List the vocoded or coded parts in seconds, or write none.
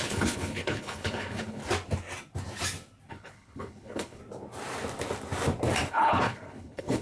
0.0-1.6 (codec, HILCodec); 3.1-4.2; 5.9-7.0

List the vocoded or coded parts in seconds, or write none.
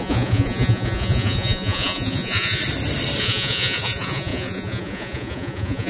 0.0-2.6 (vocoder, Vocos); 3.2-5.9